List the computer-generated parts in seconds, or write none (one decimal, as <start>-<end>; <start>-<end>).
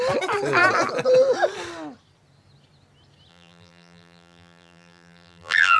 3.3-5.8